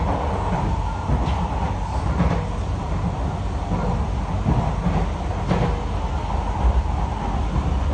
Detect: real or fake real